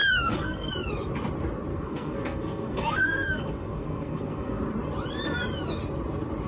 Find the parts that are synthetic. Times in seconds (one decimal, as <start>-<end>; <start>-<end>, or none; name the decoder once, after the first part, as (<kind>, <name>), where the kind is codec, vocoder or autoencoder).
0.0-0.7 (codec, SNAC); 1.7-4.6